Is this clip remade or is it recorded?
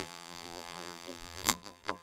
remade